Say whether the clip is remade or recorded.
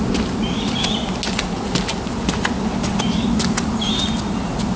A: recorded